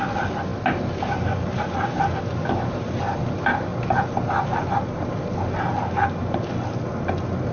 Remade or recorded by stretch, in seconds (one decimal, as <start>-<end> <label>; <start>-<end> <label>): 0.0-7.5 recorded